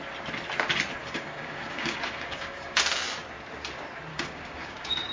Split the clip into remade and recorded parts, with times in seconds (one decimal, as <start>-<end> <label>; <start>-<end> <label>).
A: 0.0-1.0 recorded; 1.0-2.8 remade; 2.8-4.1 recorded; 4.1-5.1 remade